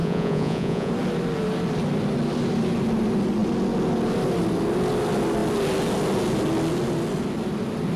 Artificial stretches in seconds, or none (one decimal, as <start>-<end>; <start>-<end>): 0.0-0.9